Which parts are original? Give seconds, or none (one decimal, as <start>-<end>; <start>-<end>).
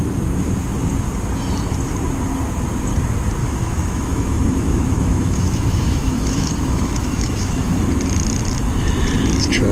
0.0-3.4; 7.8-9.7